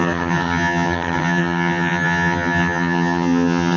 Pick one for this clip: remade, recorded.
remade